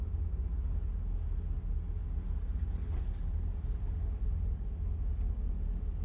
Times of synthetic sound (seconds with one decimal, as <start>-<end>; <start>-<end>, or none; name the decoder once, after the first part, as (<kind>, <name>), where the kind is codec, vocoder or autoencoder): none